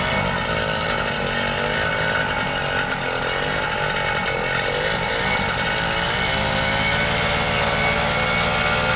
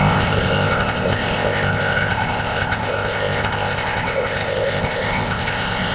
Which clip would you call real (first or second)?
first